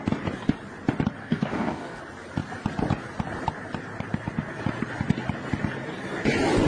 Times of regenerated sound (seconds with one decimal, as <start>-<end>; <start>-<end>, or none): 1.2-2.0